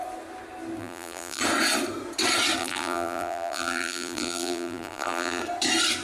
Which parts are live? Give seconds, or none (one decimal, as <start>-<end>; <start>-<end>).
0.0-0.8; 1.4-2.6; 5.4-6.0

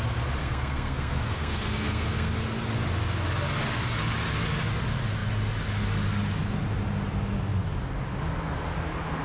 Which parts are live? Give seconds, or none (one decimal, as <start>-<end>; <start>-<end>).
0.0-0.4; 2.3-9.2

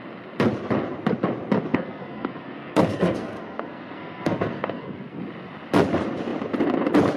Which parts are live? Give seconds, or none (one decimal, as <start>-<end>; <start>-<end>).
0.0-1.7; 5.2-7.2